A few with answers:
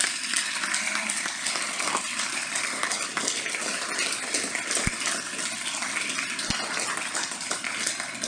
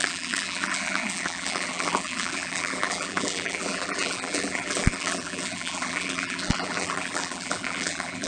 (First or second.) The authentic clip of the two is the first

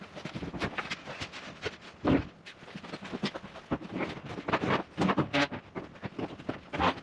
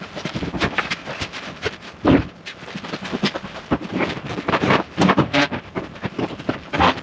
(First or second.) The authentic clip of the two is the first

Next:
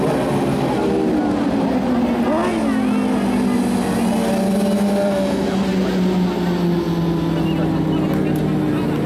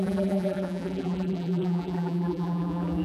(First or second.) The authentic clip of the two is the first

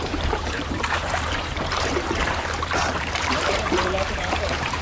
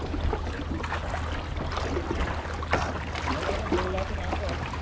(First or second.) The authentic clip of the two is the second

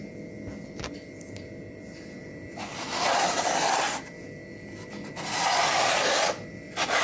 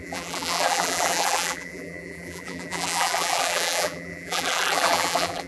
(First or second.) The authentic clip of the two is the first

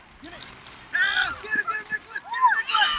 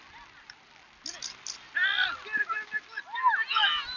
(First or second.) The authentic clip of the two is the second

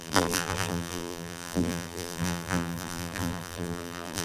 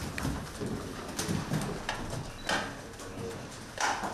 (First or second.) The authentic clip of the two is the second